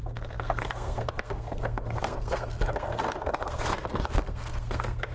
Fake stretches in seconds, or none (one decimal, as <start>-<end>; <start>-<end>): 0.0-5.1